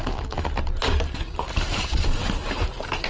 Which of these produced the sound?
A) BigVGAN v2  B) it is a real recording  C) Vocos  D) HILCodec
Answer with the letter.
A